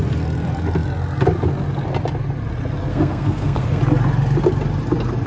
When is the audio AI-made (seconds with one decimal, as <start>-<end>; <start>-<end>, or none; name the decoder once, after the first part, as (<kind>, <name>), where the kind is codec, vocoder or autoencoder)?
2.9-3.8 (codec, SNAC)